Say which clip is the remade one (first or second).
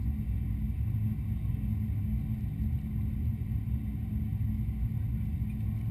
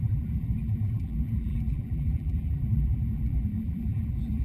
second